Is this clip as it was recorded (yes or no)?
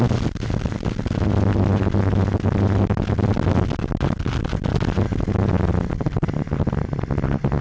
yes